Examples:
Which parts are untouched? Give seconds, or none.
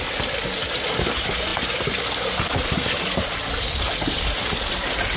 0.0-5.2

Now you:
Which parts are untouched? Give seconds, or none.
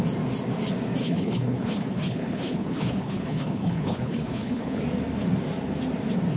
0.0-1.0; 4.8-6.4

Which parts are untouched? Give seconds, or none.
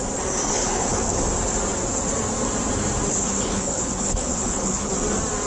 0.0-0.5; 1.2-3.1; 4.9-5.5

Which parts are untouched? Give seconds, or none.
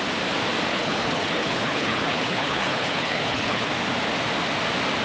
0.0-0.7; 3.7-5.0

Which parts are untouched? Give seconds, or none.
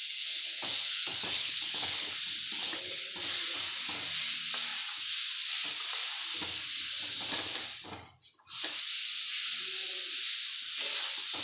2.1-2.6; 3.1-11.4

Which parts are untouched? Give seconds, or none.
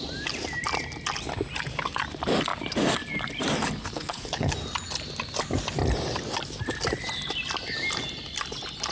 0.0-3.8; 4.5-8.9